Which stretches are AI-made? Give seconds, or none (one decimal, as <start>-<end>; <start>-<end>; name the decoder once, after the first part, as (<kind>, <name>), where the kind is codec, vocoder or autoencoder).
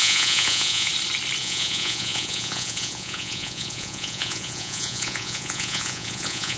0.0-0.9 (vocoder, Vocos); 1.4-6.6